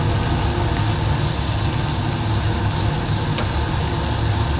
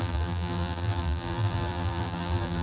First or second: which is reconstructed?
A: second